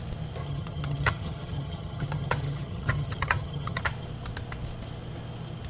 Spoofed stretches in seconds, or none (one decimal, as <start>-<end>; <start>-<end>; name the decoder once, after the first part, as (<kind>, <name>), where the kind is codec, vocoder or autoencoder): 0.4-3.8 (vocoder, HiFi-GAN)